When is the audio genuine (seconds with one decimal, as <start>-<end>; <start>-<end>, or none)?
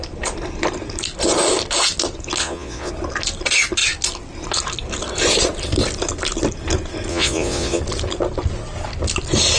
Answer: 0.0-2.4; 2.9-7.1; 7.8-9.6